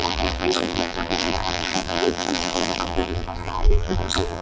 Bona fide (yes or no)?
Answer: no